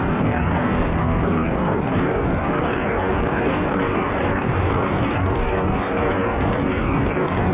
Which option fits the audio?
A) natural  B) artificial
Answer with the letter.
B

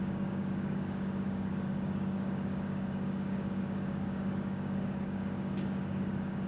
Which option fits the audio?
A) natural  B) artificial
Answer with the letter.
B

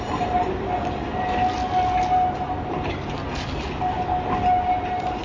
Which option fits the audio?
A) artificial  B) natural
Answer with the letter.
B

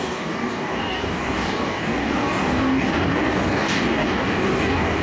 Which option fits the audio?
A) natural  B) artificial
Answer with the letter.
B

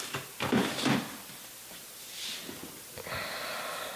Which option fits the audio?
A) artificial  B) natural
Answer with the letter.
B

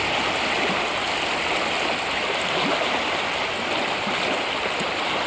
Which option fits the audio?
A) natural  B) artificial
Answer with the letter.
A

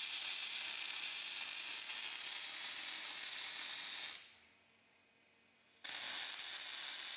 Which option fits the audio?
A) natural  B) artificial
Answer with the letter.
A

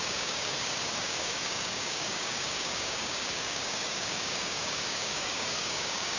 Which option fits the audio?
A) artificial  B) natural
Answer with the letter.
A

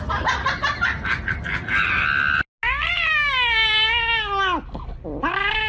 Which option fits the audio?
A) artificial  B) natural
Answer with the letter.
B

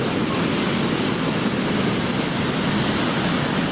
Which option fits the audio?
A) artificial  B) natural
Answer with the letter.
B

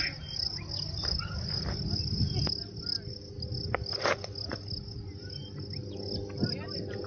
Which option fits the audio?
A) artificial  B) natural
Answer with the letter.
B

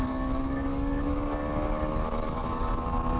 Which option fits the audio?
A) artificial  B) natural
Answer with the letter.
A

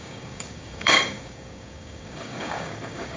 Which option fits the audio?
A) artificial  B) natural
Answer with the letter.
A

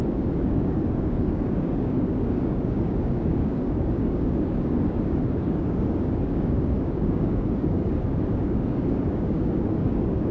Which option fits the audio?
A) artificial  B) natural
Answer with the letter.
A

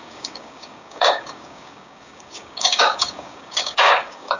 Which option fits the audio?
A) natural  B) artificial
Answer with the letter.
B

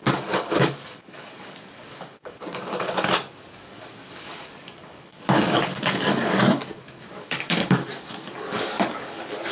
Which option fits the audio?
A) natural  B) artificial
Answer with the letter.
B